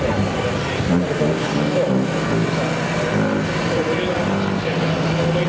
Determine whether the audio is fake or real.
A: real